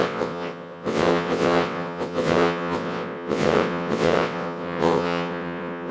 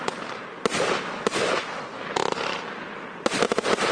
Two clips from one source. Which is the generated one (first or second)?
first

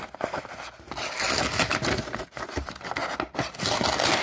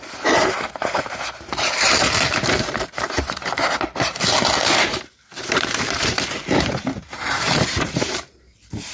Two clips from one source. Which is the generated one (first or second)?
second